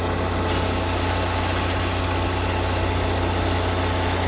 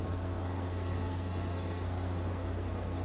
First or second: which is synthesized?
second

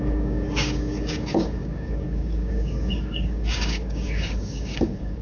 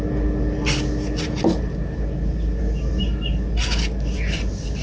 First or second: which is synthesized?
first